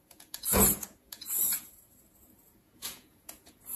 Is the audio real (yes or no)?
no